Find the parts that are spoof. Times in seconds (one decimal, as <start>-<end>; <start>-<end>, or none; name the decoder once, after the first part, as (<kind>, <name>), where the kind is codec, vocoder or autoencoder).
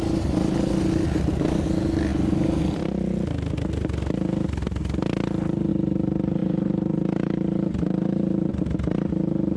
6.4-8.5 (vocoder, BigVGAN v2)